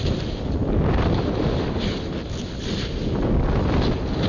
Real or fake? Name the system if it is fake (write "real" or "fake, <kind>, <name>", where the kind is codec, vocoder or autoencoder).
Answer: real